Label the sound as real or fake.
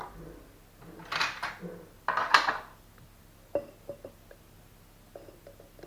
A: real